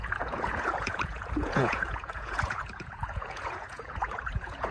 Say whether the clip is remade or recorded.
remade